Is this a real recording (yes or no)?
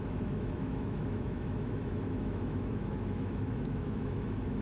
no